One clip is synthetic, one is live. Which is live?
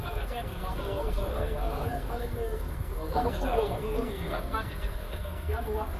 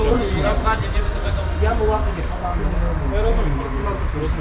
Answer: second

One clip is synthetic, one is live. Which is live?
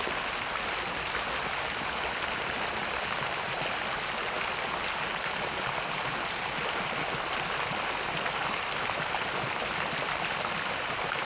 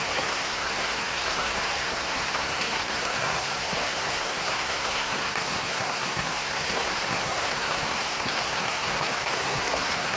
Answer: first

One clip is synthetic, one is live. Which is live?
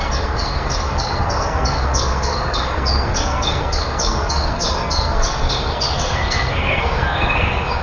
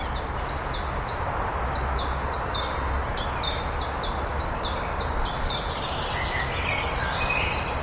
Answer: second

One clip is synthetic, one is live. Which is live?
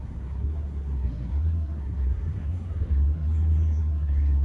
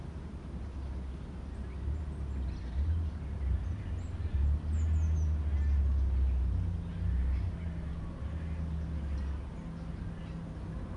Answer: second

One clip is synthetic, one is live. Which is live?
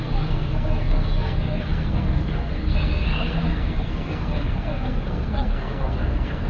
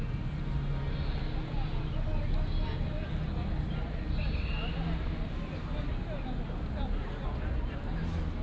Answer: second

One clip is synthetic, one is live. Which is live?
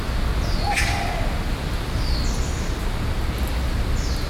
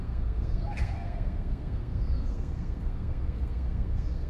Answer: first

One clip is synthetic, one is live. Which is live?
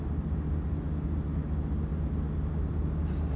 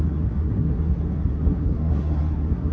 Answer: first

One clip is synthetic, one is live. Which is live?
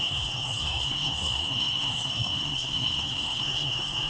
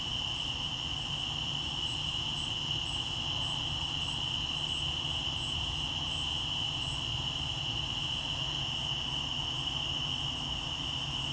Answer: second